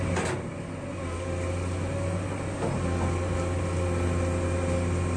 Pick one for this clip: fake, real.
real